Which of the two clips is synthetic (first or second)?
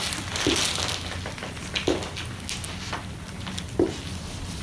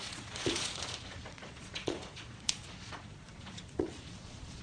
second